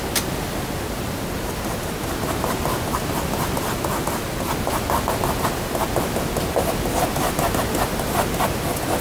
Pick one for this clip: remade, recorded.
recorded